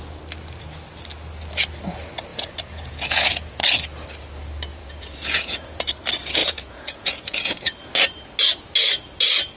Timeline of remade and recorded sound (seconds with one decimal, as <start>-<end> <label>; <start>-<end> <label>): 0.0-2.3 recorded; 2.3-3.6 remade; 3.6-4.7 recorded; 4.7-5.9 remade; 5.9-6.4 recorded; 6.4-7.8 remade; 7.8-9.6 recorded